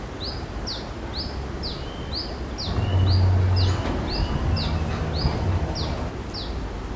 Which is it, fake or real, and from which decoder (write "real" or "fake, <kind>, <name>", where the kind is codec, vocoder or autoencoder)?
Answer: real